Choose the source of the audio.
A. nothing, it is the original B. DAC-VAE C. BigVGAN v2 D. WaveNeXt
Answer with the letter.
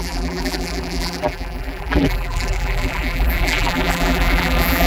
C